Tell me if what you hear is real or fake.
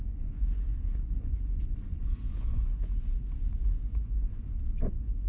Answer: fake